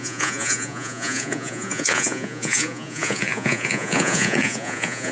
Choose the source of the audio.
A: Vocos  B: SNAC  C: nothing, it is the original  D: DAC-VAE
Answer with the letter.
A